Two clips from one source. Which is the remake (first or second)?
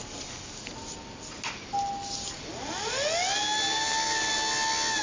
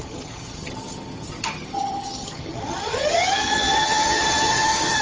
second